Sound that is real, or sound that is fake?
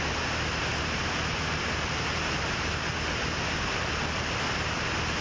real